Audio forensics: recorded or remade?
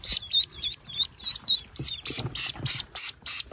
remade